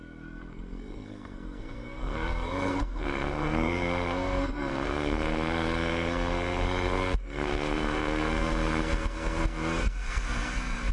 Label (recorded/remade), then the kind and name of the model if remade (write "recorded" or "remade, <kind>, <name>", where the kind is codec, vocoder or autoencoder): remade, codec, SNAC